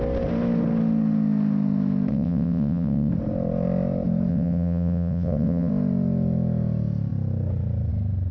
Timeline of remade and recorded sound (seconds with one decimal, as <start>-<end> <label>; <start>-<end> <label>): 0.0-2.1 recorded; 2.1-3.1 remade; 3.1-4.3 recorded; 4.3-5.7 remade; 5.7-8.3 recorded